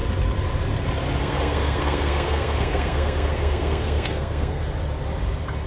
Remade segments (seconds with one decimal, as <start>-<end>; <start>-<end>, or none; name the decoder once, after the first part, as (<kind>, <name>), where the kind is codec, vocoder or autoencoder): 1.2-4.6 (codec, SNAC)